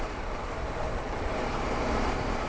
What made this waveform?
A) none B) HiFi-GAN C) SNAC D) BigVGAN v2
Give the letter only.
D